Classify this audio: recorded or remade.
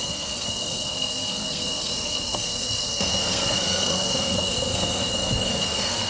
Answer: remade